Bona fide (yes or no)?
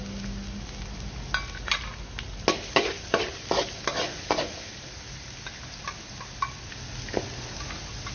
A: yes